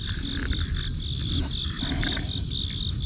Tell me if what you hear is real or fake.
real